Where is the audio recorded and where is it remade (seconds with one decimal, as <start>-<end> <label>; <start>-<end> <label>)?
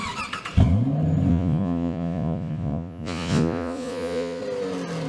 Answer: 0.0-1.3 recorded; 1.3-4.4 remade; 4.4-5.1 recorded